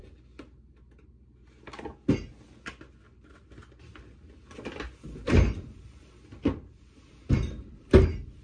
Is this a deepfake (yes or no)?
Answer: no